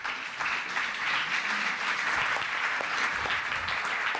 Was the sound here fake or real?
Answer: real